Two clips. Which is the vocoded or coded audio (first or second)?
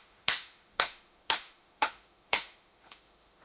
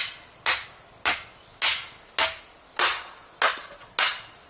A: first